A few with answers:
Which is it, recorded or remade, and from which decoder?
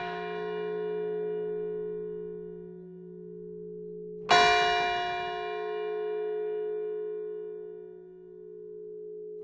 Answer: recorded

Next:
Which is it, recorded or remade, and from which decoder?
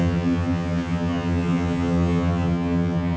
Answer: remade, vocoder, HiFi-GAN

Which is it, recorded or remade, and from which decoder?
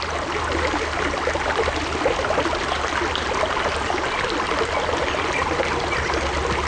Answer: recorded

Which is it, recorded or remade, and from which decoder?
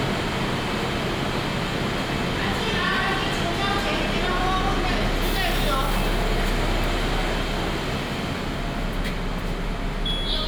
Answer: recorded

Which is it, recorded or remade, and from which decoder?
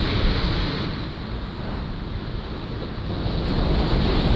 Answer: recorded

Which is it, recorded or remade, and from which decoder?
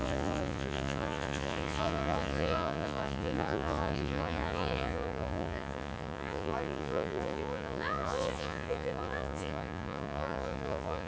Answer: remade, vocoder, Vocos